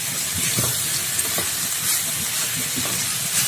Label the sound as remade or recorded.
recorded